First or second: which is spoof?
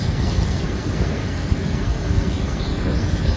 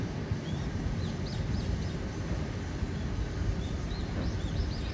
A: first